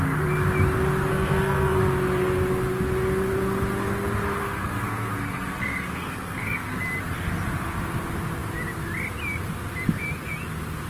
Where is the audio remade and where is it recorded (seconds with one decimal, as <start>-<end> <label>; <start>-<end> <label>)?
0.0-1.1 recorded; 1.1-1.8 remade; 1.8-4.4 recorded; 4.4-6.8 remade; 6.8-10.9 recorded